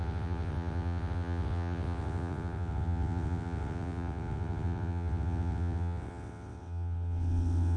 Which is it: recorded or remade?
remade